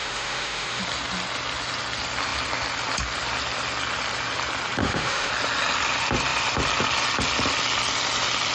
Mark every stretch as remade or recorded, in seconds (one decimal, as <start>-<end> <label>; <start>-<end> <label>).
0.0-0.8 remade; 0.8-4.8 recorded; 4.8-5.3 remade; 5.3-8.5 recorded